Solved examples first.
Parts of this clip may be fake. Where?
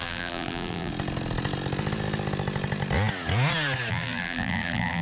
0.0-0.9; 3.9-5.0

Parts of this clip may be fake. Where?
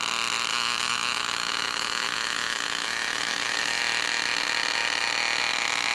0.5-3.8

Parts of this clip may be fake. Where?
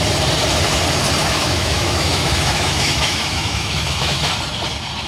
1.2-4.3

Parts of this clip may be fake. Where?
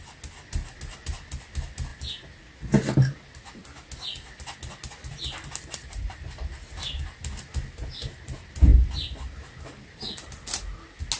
none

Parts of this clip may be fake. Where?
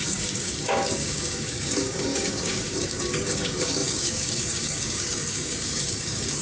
0.0-6.4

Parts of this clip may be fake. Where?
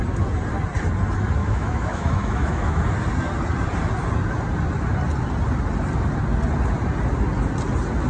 1.4-2.8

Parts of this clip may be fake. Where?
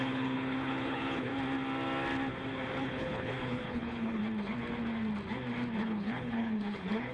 0.0-1.3; 2.8-4.2; 5.8-7.1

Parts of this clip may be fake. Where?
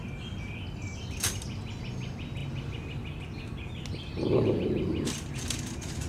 none